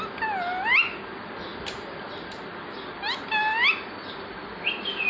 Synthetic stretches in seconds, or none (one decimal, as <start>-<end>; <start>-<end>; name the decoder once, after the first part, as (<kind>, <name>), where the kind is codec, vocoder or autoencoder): none